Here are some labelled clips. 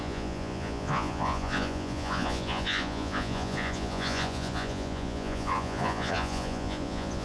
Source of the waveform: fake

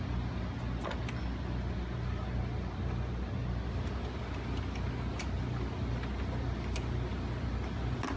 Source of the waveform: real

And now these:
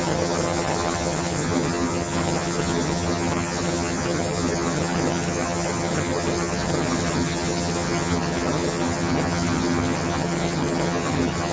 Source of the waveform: fake